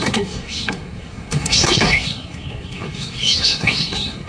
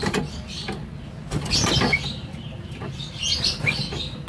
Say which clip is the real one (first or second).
second